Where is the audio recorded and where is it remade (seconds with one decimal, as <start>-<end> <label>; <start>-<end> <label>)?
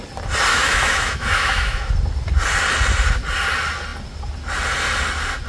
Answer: 0.0-0.5 recorded; 0.5-1.9 remade; 1.9-5.5 recorded